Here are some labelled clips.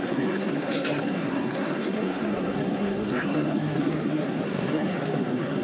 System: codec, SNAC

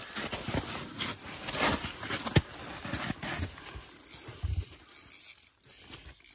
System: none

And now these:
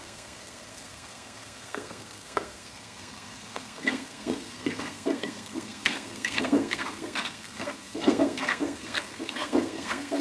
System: codec, SNAC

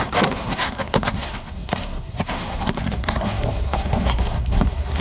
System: codec, SNAC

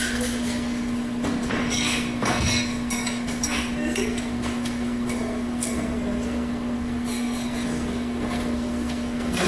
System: codec, SNAC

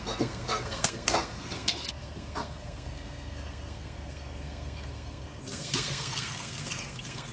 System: codec, SNAC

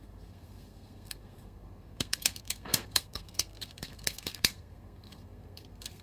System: codec, SNAC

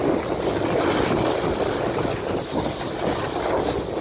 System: none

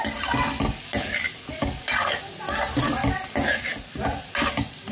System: none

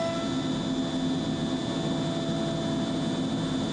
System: none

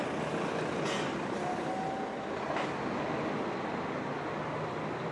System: none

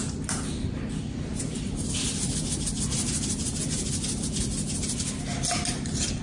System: none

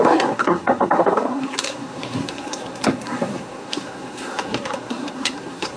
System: codec, SNAC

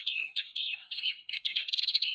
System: codec, SNAC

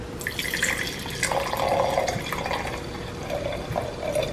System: none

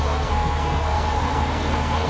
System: codec, SNAC